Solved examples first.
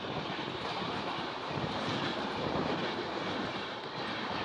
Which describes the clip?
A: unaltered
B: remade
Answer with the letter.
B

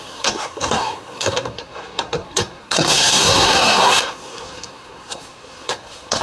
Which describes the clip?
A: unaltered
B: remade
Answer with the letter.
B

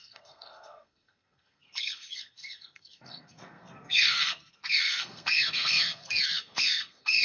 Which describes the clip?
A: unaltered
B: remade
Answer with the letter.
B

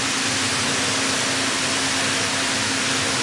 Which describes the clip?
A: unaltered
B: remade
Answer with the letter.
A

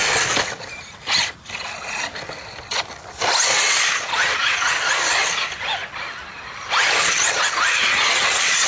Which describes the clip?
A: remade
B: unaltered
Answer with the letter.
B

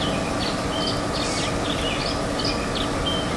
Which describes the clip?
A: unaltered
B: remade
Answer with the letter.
A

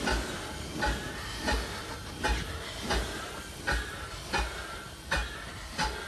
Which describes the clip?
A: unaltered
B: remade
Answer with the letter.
A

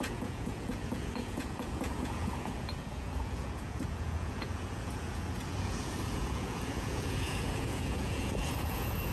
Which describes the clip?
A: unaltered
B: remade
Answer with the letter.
B